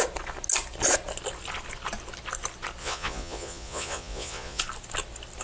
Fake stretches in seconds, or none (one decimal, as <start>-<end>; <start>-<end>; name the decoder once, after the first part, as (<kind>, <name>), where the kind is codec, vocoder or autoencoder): 2.8-4.6 (vocoder, Vocos)